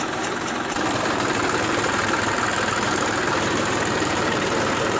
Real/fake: fake